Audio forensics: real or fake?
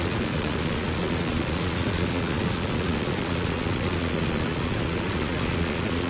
fake